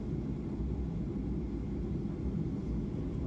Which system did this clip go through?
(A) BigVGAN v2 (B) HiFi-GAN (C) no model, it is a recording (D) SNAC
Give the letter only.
C